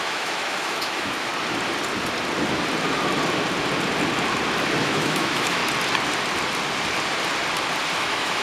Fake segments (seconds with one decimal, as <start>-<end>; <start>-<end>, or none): 0.0-1.3; 4.8-5.6; 7.9-8.4